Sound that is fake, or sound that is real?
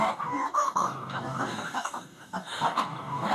fake